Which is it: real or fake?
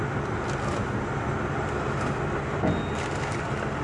real